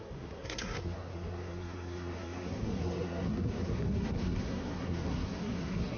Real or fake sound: fake